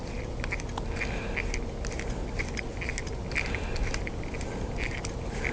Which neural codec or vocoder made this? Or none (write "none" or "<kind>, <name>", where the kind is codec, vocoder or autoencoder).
none